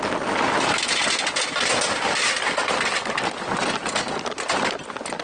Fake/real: real